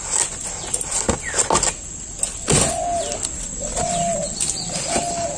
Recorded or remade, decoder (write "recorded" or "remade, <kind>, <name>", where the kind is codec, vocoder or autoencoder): recorded